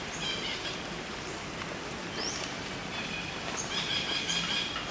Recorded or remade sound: remade